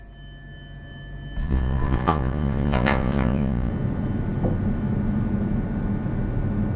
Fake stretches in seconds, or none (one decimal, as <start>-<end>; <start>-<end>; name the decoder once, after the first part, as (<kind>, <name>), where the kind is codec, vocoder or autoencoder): 1.4-3.7 (vocoder, Vocos)